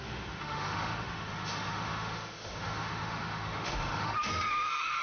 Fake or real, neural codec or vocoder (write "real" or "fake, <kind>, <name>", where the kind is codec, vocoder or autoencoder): fake, autoencoder, DAC-VAE